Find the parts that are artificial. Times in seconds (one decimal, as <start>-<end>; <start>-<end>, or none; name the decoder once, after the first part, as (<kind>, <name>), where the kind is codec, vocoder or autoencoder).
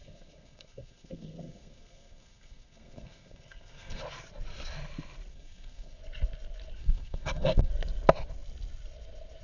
0.0-4.0 (codec, SNAC); 5.3-6.0; 6.8-7.7